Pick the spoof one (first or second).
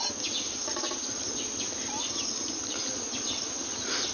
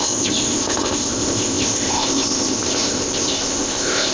second